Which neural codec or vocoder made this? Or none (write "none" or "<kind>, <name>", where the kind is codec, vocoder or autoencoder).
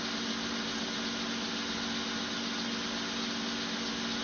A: none